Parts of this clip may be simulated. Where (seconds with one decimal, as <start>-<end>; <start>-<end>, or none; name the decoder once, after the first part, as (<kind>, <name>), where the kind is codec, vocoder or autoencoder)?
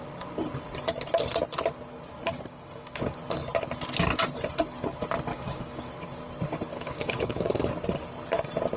2.3-3.0 (codec, DAC); 5.3-5.9; 6.7-7.7